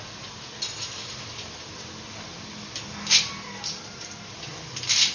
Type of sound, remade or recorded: recorded